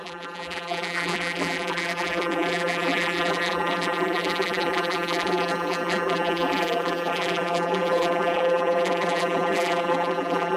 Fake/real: fake